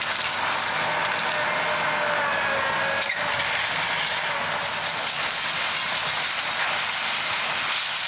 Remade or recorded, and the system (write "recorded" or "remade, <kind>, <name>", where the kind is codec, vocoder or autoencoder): recorded